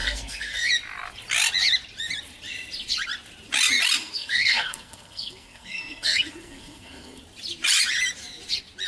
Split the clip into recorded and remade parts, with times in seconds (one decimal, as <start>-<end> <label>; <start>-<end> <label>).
0.0-0.7 remade; 0.7-4.0 recorded; 4.0-7.2 remade; 7.2-8.9 recorded